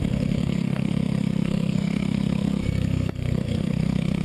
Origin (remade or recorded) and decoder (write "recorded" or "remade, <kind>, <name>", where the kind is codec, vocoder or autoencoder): remade, codec, SNAC